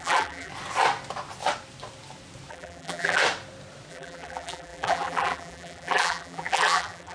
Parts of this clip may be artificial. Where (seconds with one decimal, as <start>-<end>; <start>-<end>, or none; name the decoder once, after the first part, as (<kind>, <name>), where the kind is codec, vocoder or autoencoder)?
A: 0.0-0.5 (vocoder, BigVGAN v2); 2.5-3.2; 3.9-7.1